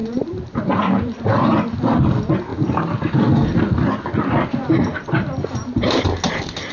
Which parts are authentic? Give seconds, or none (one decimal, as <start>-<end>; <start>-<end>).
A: 1.3-2.5; 3.2-6.7